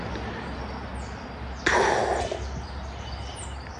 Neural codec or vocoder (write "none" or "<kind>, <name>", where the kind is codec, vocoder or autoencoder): none